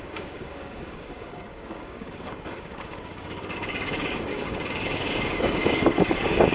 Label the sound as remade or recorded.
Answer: remade